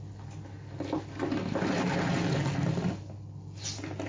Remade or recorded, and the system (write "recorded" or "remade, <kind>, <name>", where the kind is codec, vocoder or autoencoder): recorded